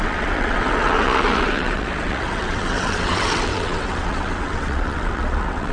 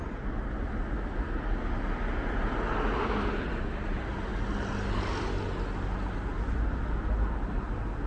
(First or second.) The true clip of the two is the second